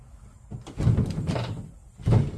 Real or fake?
real